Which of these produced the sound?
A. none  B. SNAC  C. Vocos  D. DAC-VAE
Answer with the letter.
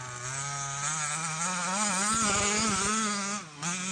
A